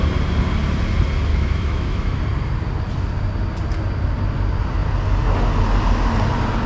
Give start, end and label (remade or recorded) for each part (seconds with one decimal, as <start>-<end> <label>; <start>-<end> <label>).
0.0-1.3 recorded; 1.3-2.2 remade; 2.2-6.7 recorded